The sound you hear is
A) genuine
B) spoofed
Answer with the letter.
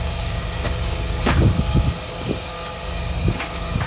B